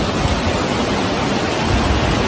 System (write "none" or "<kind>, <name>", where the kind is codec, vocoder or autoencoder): none